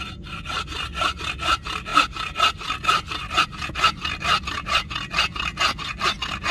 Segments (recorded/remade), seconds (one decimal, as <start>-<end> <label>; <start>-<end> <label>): 0.0-6.5 recorded